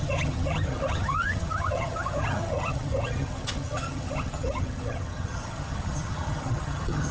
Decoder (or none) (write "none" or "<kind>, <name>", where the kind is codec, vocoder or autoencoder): vocoder, HiFi-GAN